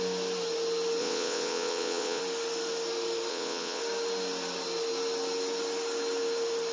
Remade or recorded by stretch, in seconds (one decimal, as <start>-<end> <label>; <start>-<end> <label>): 0.0-1.0 recorded; 1.0-2.2 remade; 2.2-3.3 recorded; 3.3-3.8 remade; 3.8-6.7 recorded